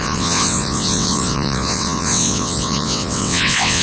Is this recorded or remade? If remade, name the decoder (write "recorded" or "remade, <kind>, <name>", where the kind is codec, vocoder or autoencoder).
remade, vocoder, WaveNeXt